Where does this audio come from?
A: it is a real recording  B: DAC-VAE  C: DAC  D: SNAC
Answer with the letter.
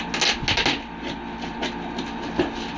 A